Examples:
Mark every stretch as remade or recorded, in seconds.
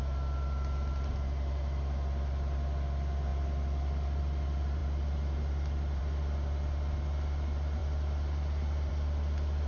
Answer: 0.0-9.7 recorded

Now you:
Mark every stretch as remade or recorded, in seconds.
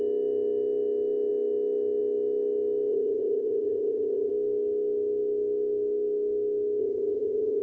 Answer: 0.0-2.9 recorded; 2.9-4.3 remade; 4.3-6.8 recorded; 6.8-7.6 remade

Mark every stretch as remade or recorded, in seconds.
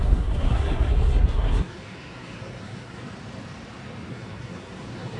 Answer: 0.0-3.0 remade; 3.0-4.1 recorded; 4.1-5.2 remade